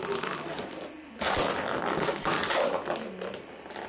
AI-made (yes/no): no